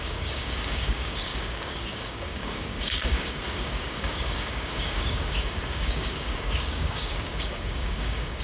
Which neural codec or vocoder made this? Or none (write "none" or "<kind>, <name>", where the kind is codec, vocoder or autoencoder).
codec, DAC